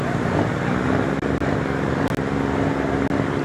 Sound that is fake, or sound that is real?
real